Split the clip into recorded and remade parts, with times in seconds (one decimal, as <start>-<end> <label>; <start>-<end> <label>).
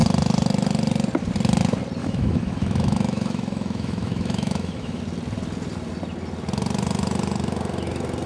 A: 0.0-2.0 recorded; 2.0-5.0 remade; 5.0-8.3 recorded